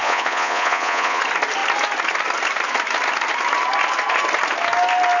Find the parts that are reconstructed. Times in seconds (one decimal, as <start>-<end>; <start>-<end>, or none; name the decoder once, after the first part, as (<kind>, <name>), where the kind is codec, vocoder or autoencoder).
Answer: 0.0-1.2 (vocoder, Vocos)